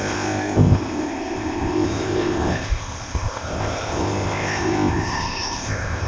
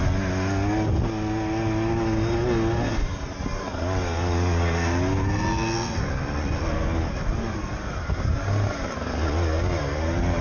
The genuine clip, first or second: second